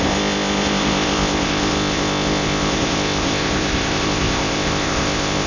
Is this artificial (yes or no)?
yes